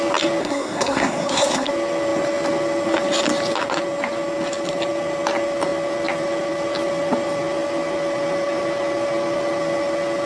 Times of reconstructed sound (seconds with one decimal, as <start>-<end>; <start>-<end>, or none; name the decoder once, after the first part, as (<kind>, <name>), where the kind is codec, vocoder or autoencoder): 0.4-1.7 (codec, SNAC)